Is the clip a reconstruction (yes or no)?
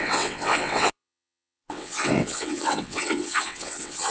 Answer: yes